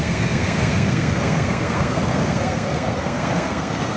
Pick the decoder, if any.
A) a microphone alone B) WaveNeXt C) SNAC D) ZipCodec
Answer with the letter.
C